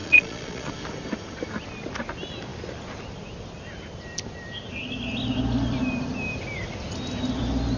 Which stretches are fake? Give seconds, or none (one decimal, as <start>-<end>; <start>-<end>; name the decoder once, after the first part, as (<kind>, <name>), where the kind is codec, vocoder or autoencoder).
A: 0.0-0.7 (vocoder, Vocos)